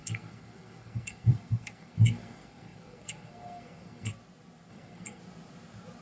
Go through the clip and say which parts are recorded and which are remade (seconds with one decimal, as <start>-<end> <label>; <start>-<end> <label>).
0.0-4.1 remade; 4.1-4.7 recorded; 4.7-5.2 remade; 5.2-6.0 recorded